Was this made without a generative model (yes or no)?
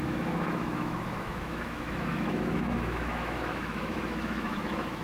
no